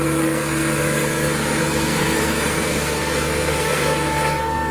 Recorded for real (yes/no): no